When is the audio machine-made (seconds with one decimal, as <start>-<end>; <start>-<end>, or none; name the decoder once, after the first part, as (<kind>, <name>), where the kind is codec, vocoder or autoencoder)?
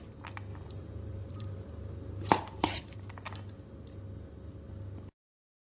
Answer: 0.5-2.3 (vocoder, BigVGAN v2)